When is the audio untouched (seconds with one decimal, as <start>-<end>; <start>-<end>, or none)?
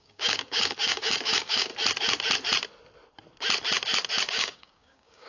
1.7-4.3